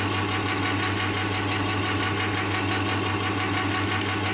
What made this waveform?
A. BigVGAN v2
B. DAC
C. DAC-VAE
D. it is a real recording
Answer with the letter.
D